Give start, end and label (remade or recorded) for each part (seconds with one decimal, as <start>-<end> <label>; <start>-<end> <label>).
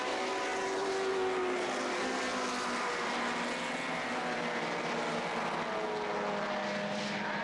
0.0-7.4 recorded